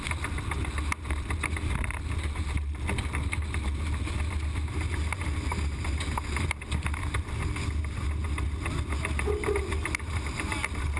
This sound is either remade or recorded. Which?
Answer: recorded